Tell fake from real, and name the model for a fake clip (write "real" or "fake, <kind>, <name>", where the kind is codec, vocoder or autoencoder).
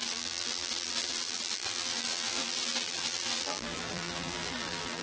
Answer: fake, vocoder, BigVGAN v2